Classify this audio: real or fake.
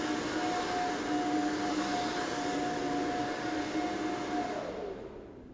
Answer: real